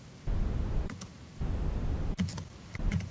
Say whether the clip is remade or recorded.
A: recorded